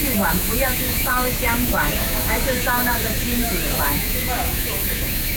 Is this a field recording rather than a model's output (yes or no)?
no